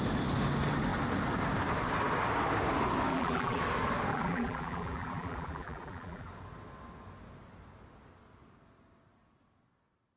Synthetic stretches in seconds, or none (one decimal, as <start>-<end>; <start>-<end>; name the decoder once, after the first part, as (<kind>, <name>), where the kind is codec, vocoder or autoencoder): 3.1-3.6 (vocoder, BigVGAN v2); 4.1-6.3